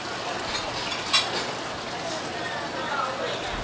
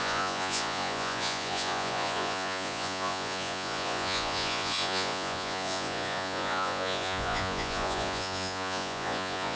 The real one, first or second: first